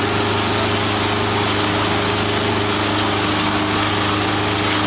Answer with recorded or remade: recorded